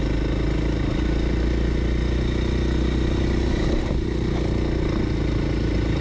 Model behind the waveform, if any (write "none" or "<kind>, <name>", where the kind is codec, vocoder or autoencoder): none